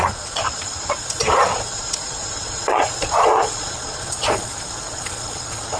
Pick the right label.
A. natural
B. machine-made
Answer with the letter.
B